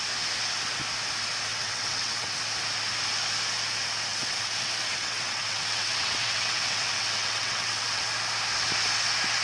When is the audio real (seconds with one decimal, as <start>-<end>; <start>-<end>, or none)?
0.0-1.5; 2.4-4.1; 8.1-9.4